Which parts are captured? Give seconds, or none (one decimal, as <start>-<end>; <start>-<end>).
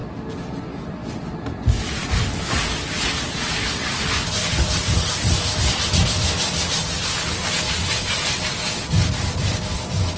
0.0-10.2